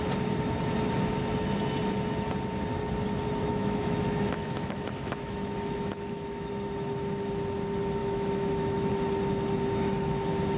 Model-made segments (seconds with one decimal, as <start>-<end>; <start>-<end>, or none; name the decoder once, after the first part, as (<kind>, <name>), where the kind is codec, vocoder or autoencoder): 3.4-6.5 (autoencoder, DAC-VAE); 8.0-8.9